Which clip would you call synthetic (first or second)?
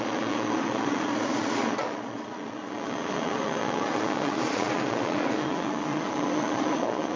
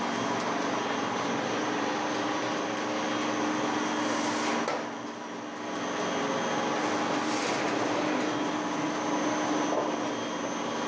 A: first